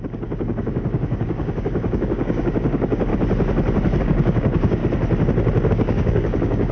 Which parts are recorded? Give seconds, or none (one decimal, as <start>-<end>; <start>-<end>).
3.1-4.0; 4.8-5.7